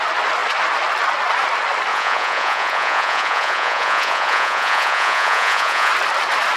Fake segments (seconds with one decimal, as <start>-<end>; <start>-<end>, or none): 1.9-5.9